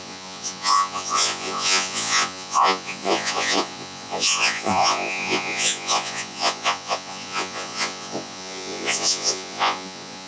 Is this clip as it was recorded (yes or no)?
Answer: no